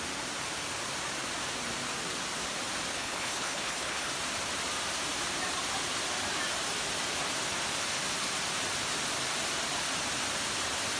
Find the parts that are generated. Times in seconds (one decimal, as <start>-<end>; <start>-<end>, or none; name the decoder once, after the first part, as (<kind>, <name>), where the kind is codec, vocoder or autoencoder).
2.9-4.1 (codec, HILCodec)